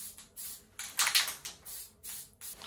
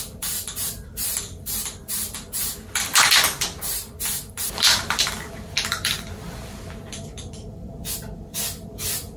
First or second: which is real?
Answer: first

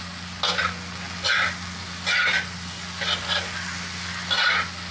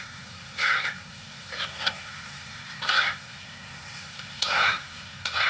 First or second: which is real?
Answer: first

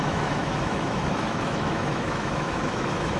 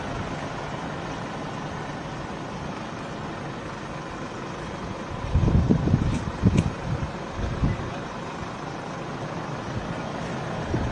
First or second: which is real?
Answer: second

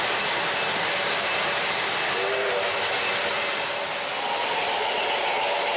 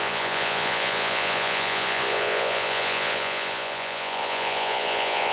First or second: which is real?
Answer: first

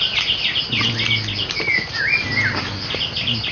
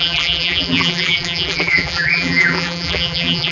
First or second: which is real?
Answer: first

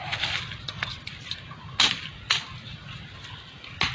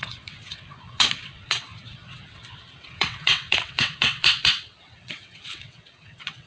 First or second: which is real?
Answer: first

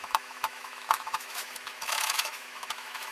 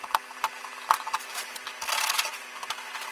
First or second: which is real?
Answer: second